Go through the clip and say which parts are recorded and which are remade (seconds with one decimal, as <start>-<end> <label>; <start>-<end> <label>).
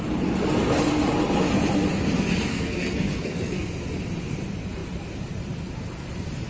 0.0-2.5 recorded; 2.5-3.7 remade; 3.7-6.5 recorded